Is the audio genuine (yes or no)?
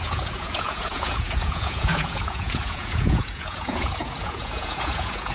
no